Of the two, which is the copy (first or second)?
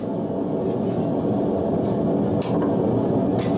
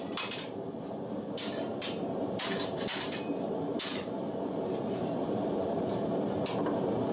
second